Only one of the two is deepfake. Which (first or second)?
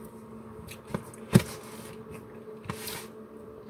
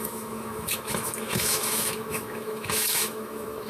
second